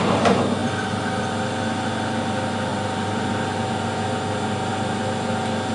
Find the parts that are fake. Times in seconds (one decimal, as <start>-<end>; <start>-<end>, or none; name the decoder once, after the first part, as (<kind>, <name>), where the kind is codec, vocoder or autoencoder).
0.6-1.2 (vocoder, BigVGAN v2)